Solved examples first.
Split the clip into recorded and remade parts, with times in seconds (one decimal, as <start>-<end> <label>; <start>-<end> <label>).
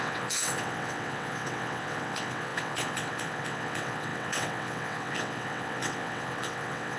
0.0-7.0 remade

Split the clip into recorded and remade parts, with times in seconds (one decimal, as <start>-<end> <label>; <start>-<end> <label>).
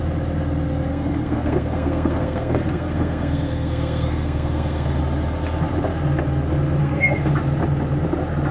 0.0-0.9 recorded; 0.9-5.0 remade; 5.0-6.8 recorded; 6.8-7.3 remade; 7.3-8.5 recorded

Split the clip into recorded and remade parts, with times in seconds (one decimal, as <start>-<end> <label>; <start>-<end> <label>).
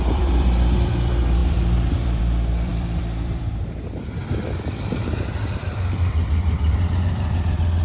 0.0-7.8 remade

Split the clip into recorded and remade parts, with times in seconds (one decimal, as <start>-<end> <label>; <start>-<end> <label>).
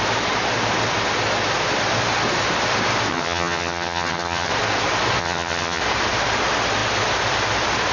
0.0-3.1 recorded; 3.1-4.5 remade; 4.5-5.2 recorded; 5.2-5.8 remade; 5.8-7.9 recorded